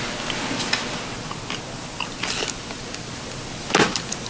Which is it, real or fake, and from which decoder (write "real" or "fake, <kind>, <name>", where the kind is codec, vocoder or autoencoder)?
real